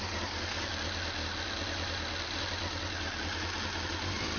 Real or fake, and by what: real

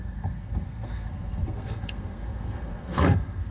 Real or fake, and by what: fake, codec, SNAC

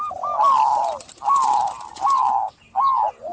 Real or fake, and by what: real